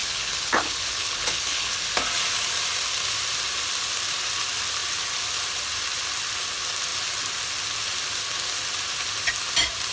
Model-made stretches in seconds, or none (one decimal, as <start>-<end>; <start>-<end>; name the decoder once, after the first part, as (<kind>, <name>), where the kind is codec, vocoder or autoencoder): 0.0-1.7 (codec, HILCodec)